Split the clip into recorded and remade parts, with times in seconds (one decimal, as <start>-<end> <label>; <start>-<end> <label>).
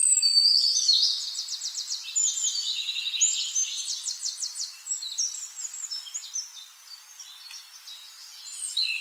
0.0-9.0 recorded